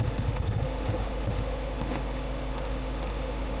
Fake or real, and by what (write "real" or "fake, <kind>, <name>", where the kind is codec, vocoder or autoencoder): fake, autoencoder, DAC-VAE